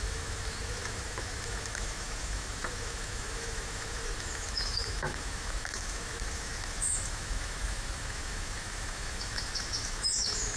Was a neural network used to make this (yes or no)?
yes